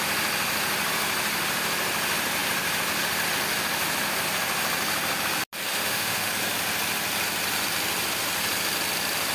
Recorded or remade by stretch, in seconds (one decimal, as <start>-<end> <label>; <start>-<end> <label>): 0.0-5.7 recorded; 5.7-6.3 remade; 6.3-9.3 recorded